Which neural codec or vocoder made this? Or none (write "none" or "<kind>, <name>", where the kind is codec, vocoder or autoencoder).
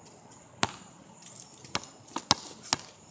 none